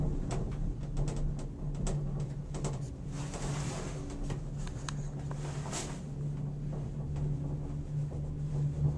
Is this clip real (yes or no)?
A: yes